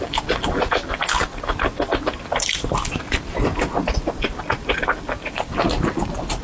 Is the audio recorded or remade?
recorded